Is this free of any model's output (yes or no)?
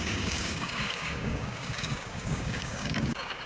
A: no